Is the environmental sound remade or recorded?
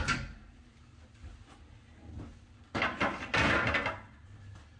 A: recorded